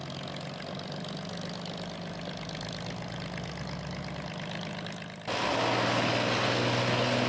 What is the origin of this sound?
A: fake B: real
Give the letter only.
B